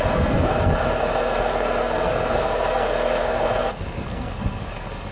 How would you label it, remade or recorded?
remade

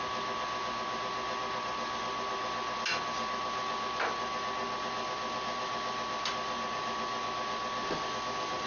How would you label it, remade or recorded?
recorded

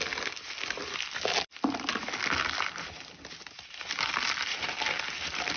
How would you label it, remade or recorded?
recorded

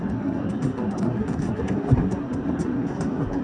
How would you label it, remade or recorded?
remade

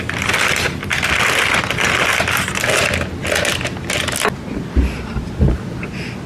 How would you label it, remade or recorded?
recorded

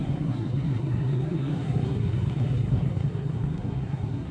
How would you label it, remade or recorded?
remade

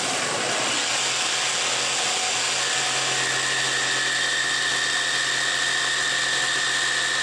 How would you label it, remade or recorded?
recorded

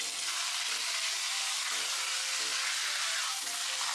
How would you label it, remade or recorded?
recorded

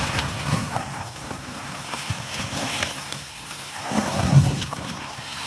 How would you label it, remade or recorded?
remade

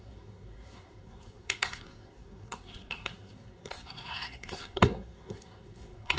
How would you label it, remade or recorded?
remade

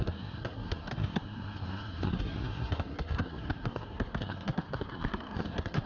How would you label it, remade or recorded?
remade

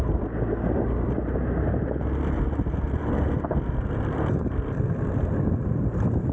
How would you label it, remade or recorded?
recorded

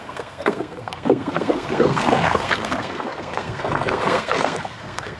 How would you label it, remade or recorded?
remade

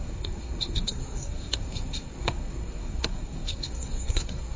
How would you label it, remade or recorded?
remade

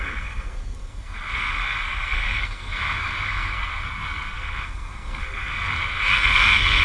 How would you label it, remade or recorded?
remade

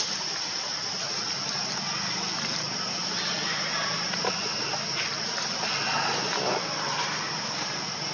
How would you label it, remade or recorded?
recorded